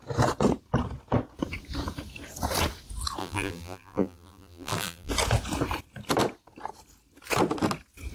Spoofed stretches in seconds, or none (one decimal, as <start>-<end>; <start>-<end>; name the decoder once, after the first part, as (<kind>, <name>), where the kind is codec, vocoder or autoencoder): 3.2-5.1 (vocoder, BigVGAN v2)